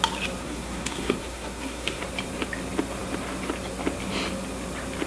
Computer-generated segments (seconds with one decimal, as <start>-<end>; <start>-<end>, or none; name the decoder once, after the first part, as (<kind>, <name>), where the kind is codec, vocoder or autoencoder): 0.4-2.0 (codec, SNAC)